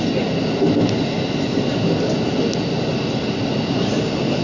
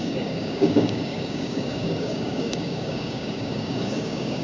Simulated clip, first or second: second